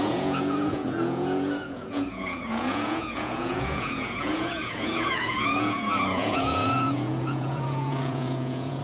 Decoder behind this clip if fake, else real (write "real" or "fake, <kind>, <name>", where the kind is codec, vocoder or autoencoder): fake, vocoder, Vocos